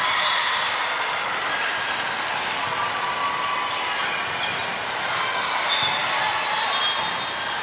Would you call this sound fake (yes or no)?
no